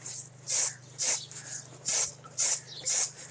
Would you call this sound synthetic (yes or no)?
no